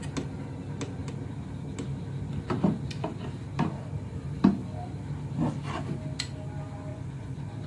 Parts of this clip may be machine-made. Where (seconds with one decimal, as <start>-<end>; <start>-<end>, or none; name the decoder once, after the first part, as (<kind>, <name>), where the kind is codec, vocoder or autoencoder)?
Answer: 6.9-7.7 (vocoder, Vocos)